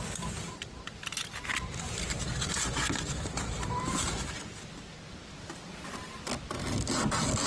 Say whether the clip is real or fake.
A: real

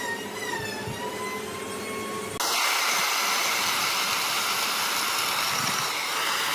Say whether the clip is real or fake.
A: real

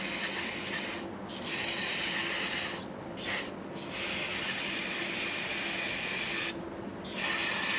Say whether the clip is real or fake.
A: real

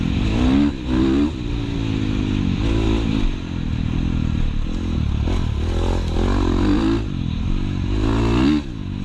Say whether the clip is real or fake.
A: real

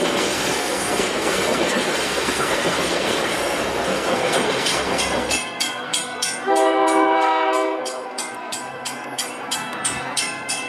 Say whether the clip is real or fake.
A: fake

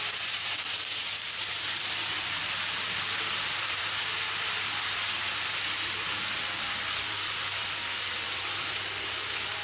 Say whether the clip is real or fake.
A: fake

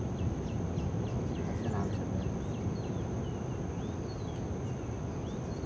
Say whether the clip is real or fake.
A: real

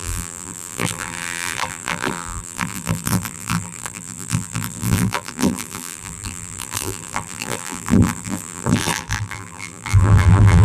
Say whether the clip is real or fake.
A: fake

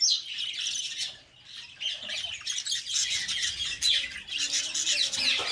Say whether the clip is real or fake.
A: real